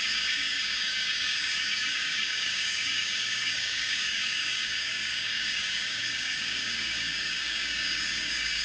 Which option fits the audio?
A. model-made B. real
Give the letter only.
A